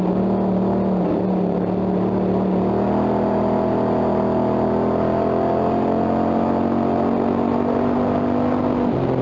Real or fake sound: real